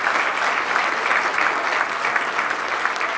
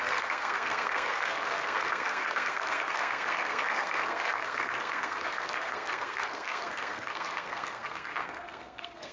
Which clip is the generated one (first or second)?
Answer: second